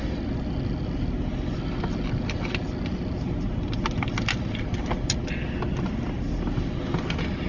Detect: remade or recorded recorded